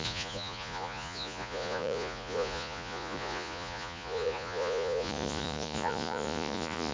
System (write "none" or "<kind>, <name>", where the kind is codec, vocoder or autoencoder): vocoder, Vocos